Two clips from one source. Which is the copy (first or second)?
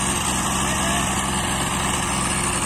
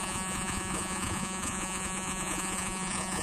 second